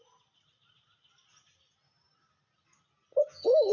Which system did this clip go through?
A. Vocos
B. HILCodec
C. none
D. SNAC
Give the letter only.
C